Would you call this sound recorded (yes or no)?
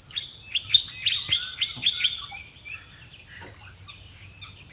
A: yes